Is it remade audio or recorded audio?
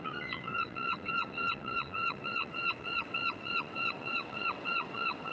remade